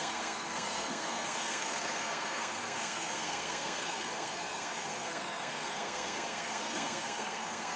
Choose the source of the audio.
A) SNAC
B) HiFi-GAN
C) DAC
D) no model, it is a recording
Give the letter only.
A